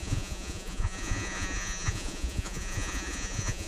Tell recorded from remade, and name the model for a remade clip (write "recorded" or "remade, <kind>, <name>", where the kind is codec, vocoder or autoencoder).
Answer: remade, vocoder, Vocos